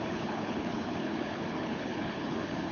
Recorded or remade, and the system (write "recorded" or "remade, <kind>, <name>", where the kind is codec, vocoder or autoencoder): remade, codec, HILCodec